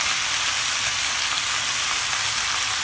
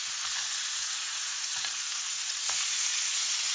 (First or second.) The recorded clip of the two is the first